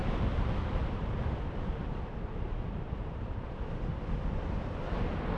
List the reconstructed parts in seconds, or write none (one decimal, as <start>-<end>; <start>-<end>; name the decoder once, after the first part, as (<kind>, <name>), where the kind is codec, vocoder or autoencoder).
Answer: 0.0-5.4 (vocoder, BigVGAN v2)